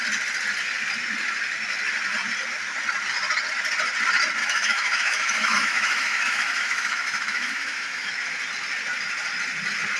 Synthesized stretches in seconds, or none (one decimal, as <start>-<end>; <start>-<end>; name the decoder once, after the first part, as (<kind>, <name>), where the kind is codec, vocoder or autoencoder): 4.4-8.1 (autoencoder, DAC-VAE)